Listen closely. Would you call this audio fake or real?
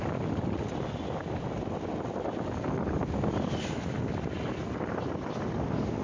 real